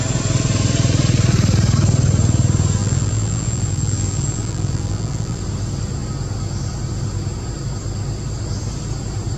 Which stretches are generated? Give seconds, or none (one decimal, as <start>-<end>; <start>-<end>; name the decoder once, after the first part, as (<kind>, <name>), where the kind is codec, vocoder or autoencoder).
2.8-5.4 (vocoder, BigVGAN v2)